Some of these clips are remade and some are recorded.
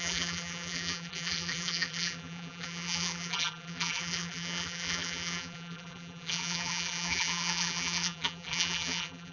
remade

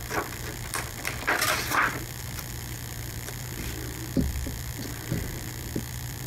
remade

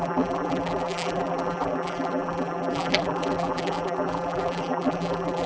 remade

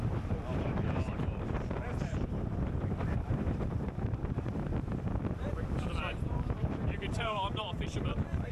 remade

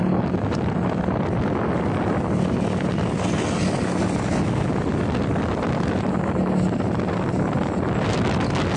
recorded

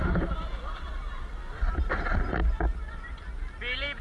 recorded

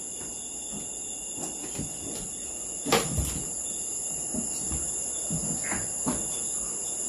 recorded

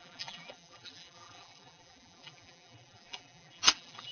remade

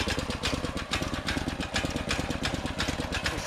recorded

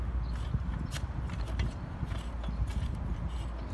recorded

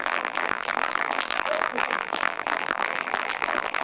remade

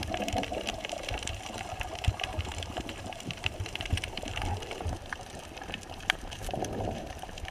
remade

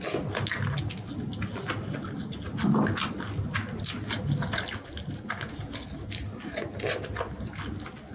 recorded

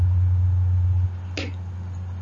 recorded